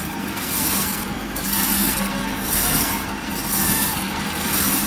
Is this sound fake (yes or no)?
yes